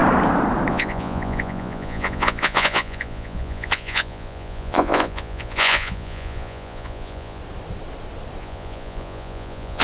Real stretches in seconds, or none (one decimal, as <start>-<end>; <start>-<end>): 0.0-0.7; 7.4-8.4